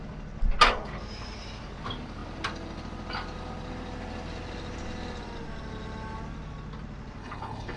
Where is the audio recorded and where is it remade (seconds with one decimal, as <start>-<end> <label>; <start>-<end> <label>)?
0.0-7.2 recorded; 7.2-7.8 remade